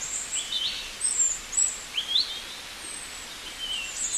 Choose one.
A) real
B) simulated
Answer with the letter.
A